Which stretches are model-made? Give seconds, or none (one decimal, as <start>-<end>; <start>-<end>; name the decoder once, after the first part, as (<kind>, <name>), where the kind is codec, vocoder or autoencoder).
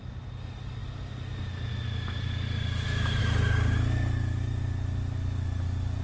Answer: none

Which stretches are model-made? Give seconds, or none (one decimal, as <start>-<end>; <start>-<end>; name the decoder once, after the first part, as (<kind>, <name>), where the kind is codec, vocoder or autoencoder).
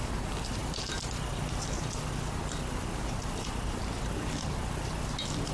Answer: none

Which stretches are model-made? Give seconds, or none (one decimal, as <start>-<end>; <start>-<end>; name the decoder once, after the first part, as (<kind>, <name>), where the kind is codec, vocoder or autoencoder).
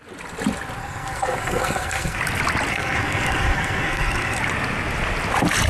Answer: 0.8-2.2 (codec, SNAC); 2.7-4.4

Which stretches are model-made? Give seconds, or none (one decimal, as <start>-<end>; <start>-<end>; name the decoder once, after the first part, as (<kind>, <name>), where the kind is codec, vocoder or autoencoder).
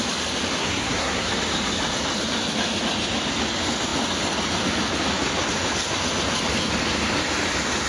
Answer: 0.6-1.3 (codec, SNAC)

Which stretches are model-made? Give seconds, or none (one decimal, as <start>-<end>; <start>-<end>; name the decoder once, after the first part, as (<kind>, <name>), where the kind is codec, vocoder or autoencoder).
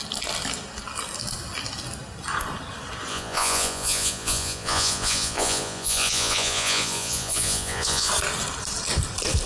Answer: 3.1-8.1 (vocoder, Vocos)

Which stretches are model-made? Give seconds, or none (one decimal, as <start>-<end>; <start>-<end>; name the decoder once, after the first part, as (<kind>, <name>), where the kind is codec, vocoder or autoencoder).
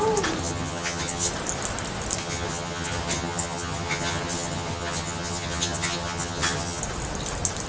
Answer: 0.4-1.3 (vocoder, HiFi-GAN); 2.2-6.8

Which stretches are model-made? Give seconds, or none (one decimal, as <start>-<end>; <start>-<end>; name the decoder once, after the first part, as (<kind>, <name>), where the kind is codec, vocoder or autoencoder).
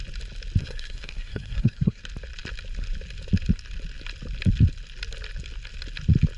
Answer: 0.6-2.0 (codec, SNAC)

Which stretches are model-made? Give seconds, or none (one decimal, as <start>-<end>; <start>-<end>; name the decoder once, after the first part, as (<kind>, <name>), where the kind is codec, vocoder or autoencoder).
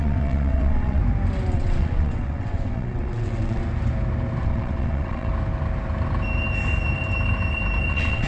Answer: 0.0-1.0 (vocoder, WaveNeXt); 1.5-3.6; 4.4-5.3; 7.9-8.3